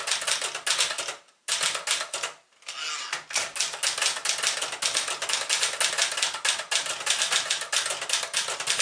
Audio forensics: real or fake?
real